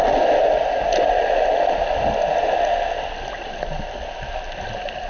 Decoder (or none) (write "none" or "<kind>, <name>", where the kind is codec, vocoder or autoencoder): none